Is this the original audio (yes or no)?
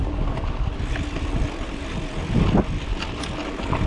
yes